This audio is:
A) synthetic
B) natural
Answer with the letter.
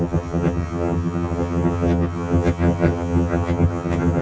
A